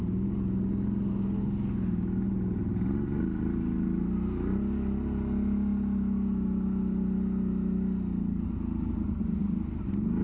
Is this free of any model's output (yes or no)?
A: yes